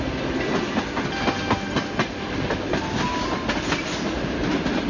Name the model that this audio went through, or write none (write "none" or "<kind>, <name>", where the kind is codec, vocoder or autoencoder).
none